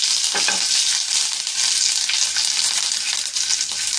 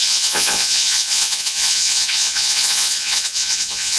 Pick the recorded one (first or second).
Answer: first